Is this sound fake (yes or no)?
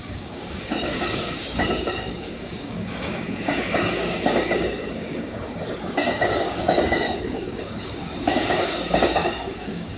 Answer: yes